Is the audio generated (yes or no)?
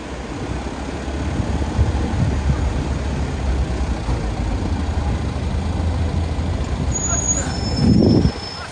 no